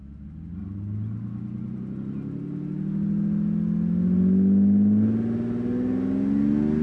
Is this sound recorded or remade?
recorded